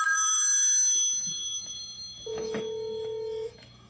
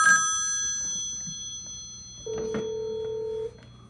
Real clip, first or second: second